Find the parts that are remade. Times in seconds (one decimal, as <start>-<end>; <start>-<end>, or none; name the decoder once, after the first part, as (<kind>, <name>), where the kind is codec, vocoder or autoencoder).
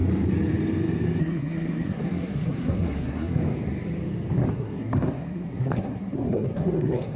1.2-3.4 (codec, SNAC); 4.5-7.2